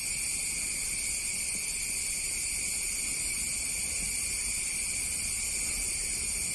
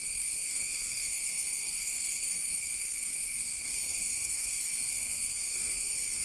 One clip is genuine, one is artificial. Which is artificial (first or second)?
second